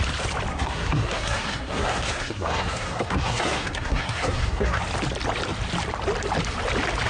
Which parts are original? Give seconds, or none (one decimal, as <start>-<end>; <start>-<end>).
0.0-0.5; 4.8-7.1